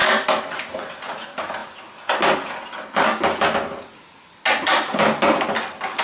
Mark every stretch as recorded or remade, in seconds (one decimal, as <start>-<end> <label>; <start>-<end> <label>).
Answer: 0.0-6.0 recorded